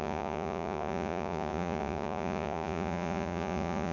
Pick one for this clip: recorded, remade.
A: remade